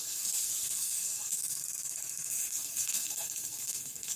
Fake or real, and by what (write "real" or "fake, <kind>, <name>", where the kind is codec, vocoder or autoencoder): fake, codec, SNAC